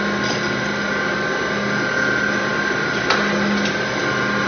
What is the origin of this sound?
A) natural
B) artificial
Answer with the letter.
A